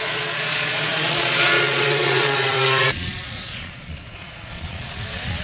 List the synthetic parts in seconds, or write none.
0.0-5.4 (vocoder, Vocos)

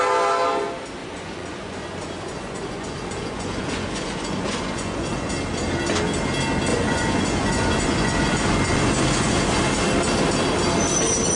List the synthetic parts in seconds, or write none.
1.0-5.3 (vocoder, Vocos); 6.7-9.5

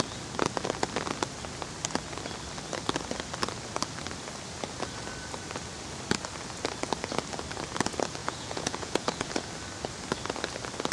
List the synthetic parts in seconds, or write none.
8.2-9.3 (vocoder, Vocos)